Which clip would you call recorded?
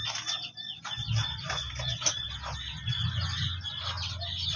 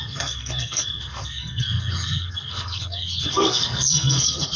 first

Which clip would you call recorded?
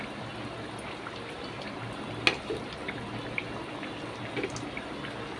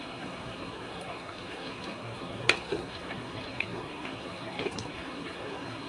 first